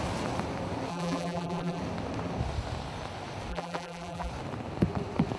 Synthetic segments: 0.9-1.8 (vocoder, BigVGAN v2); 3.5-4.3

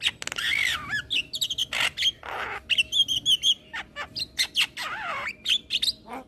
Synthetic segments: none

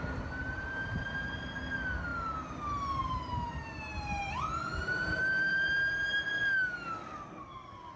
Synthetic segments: 0.4-1.0 (vocoder, BigVGAN v2); 4.7-6.3